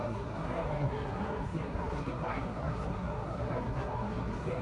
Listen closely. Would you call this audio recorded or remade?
remade